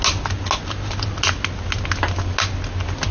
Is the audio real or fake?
real